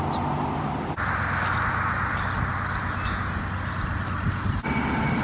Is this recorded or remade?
recorded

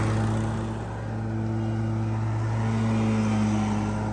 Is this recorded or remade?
recorded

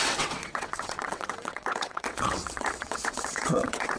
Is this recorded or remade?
remade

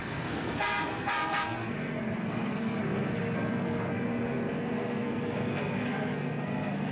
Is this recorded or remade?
remade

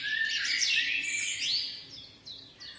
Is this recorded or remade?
recorded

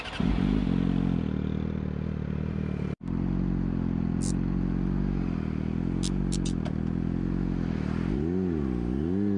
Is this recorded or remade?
recorded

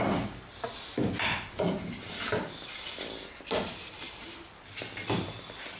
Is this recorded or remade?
recorded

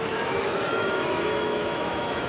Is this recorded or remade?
remade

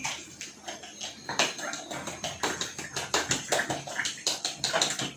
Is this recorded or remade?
recorded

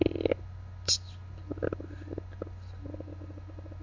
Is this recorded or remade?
recorded